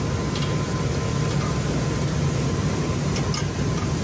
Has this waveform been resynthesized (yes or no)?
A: no